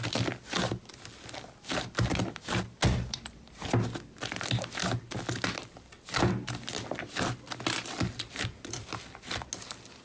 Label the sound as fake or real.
real